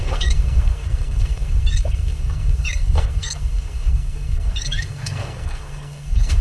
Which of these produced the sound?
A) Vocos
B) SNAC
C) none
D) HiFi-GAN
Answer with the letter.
B